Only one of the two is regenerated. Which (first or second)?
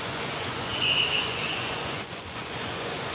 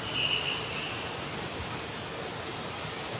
first